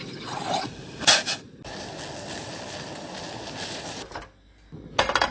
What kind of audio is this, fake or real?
real